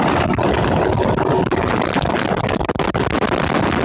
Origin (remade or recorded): recorded